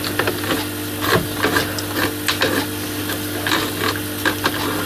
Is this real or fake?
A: real